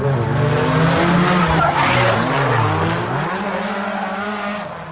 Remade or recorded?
recorded